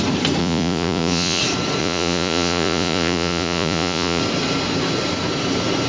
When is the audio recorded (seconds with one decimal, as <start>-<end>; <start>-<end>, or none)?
0.0-0.4; 1.4-1.8; 4.2-5.9